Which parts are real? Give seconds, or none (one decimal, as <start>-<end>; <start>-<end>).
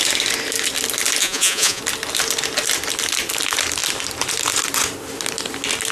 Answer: 0.0-1.2; 1.8-5.9